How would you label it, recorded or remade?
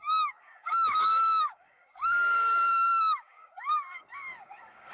remade